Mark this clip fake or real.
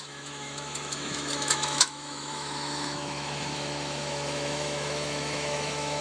fake